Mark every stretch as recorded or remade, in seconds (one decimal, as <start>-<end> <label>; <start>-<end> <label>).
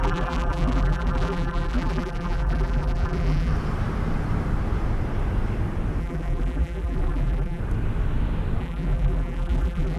0.0-3.5 remade; 3.5-6.0 recorded; 6.0-7.6 remade; 7.6-8.6 recorded; 8.6-10.0 remade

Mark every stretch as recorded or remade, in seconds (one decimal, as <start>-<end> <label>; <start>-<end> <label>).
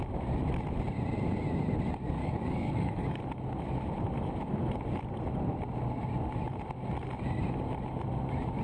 0.0-2.2 recorded; 2.2-3.2 remade; 3.2-8.6 recorded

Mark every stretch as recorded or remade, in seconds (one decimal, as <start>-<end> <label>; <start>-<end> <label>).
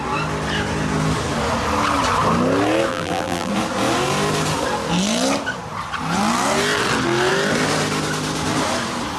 0.0-2.9 recorded; 2.9-3.5 remade; 3.5-9.2 recorded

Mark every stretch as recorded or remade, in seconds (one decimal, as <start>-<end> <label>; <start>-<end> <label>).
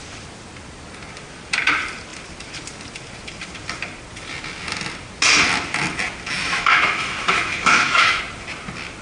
0.0-6.4 recorded; 6.4-8.2 remade; 8.2-9.0 recorded